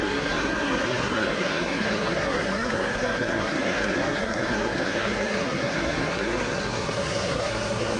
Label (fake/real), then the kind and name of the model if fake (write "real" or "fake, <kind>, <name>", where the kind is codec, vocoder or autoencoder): fake, codec, SNAC